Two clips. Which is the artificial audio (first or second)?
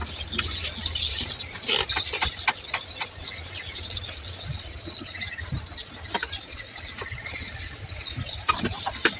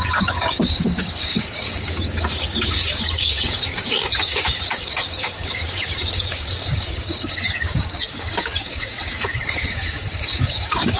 second